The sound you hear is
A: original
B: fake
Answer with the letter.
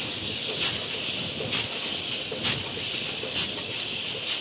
A